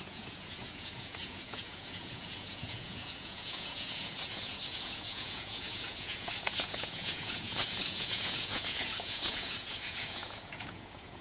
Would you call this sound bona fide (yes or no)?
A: no